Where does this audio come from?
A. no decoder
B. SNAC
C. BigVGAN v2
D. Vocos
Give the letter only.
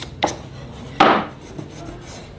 A